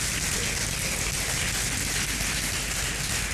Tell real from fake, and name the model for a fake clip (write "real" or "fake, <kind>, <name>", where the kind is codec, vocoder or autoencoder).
real